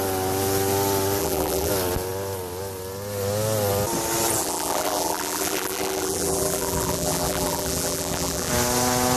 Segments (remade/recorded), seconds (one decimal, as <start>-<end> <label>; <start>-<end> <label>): 0.0-1.2 recorded; 1.2-1.7 remade; 1.7-4.4 recorded; 4.4-8.5 remade; 8.5-9.2 recorded